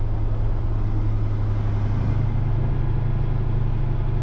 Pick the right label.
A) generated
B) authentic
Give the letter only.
B